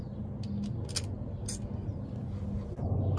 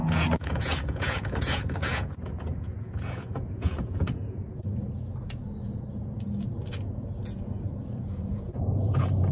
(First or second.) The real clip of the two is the first